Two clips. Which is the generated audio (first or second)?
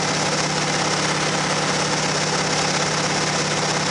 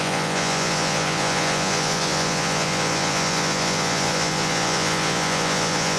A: second